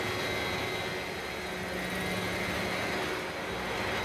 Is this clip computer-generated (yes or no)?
no